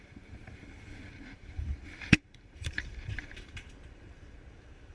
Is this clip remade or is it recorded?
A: remade